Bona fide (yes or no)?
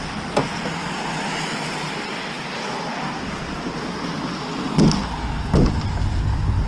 yes